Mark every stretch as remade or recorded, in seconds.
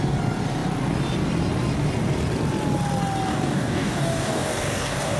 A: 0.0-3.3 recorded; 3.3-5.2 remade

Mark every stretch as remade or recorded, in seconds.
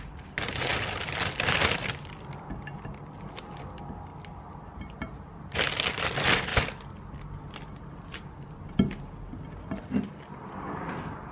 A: 0.0-11.3 recorded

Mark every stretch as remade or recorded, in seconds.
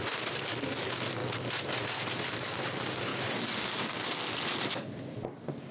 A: 0.0-3.1 recorded; 3.1-4.1 remade; 4.1-5.7 recorded